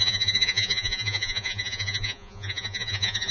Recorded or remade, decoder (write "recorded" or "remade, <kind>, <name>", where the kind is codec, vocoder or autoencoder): remade, vocoder, Vocos